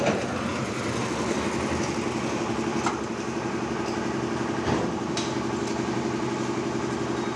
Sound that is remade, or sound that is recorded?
recorded